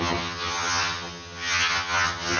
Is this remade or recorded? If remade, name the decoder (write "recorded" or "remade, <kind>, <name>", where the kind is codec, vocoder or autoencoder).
remade, vocoder, HiFi-GAN